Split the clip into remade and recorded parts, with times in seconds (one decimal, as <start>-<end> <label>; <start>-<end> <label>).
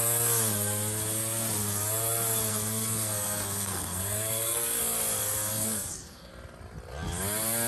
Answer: 0.0-2.5 recorded; 2.5-4.8 remade; 4.8-5.5 recorded; 5.5-6.3 remade; 6.3-7.7 recorded